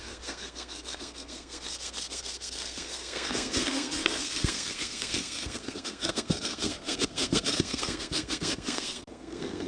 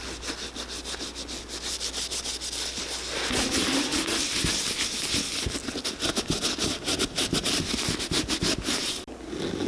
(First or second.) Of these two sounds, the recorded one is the second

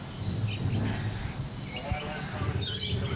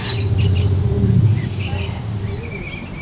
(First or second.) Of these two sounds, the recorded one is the first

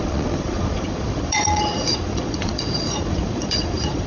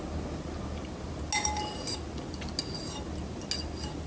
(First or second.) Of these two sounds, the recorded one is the second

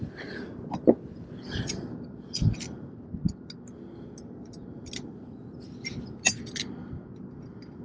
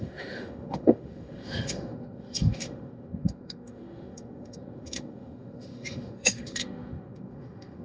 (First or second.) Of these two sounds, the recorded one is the first